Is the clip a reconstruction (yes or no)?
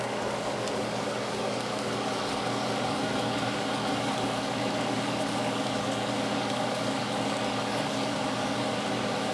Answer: yes